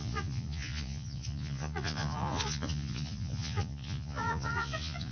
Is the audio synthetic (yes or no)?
yes